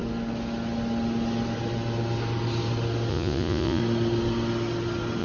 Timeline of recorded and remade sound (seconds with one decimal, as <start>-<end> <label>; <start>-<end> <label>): 0.0-3.1 recorded; 3.1-3.8 remade; 3.8-5.2 recorded